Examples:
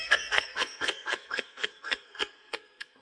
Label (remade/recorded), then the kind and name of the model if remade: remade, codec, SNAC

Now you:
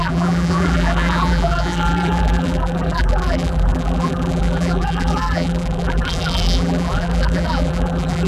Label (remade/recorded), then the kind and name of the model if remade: remade, vocoder, BigVGAN v2